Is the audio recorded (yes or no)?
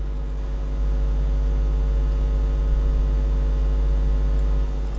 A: yes